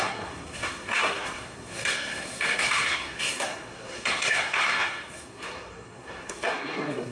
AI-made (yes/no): yes